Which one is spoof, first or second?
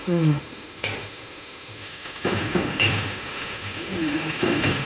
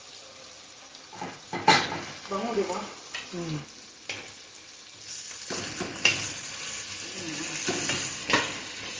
first